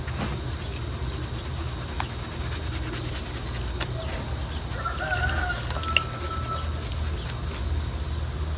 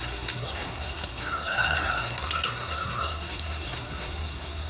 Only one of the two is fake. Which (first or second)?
second